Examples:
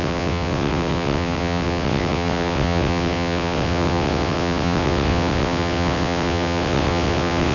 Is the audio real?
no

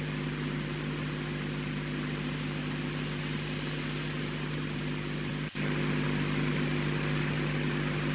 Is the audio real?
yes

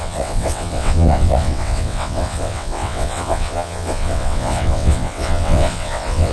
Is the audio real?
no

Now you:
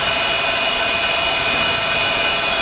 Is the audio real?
yes